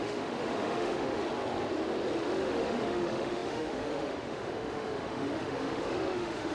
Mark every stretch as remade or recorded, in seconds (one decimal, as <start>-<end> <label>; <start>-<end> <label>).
0.0-1.2 remade; 1.2-2.2 recorded; 2.2-6.5 remade